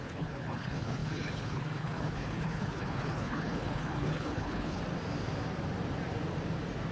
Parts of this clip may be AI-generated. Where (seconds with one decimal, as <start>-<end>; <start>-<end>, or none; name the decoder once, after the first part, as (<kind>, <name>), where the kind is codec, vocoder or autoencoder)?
0.0-4.8 (codec, HILCodec)

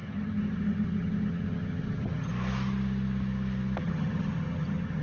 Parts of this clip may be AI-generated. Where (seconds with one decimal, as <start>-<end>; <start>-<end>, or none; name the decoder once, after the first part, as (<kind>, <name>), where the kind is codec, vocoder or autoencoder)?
0.0-2.3 (vocoder, HiFi-GAN); 3.8-5.0

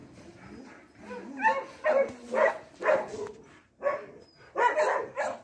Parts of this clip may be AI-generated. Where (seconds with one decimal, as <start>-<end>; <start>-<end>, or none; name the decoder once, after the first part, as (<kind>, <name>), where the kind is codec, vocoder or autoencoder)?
none